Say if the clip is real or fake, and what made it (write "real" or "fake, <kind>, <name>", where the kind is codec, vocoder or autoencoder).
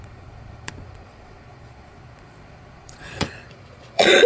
fake, vocoder, Vocos